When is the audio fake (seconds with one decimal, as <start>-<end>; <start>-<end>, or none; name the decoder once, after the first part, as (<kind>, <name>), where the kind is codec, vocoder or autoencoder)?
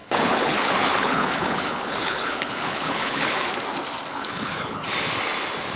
0.0-3.5 (codec, HILCodec); 4.1-4.8